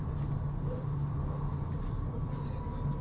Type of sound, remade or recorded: recorded